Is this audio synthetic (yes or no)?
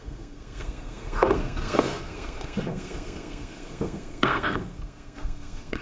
yes